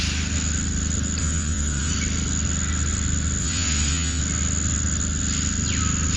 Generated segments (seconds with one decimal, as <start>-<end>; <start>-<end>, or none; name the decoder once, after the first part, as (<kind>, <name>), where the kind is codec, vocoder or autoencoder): 1.2-1.9 (vocoder, WaveNeXt); 3.4-4.2